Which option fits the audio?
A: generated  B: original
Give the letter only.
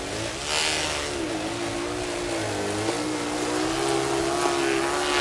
B